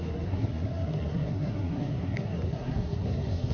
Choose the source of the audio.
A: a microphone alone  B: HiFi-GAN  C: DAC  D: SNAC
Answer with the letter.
D